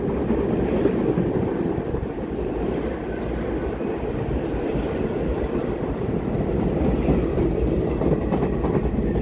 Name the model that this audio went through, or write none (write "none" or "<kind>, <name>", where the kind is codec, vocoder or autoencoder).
none